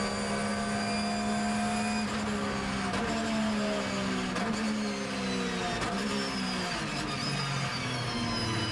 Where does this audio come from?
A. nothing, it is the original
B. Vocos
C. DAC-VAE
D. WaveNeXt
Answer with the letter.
A